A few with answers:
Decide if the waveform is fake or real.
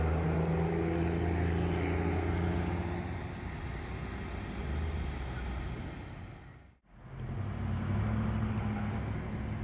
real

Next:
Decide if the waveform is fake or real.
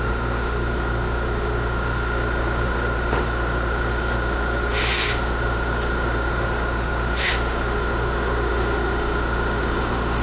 fake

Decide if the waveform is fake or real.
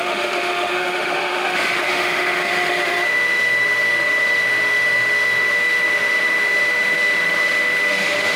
fake